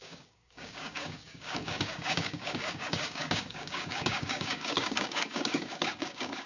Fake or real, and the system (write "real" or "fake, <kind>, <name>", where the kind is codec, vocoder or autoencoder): fake, codec, DAC